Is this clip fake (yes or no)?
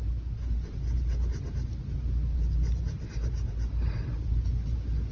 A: no